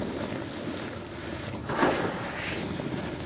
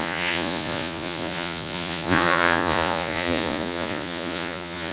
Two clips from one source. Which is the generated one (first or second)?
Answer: second